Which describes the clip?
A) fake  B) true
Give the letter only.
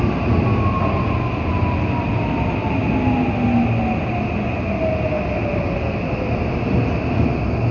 B